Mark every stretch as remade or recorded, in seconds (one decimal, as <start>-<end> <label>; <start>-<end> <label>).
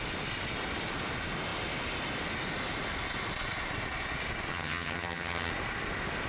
0.0-4.5 recorded; 4.5-5.5 remade; 5.5-6.3 recorded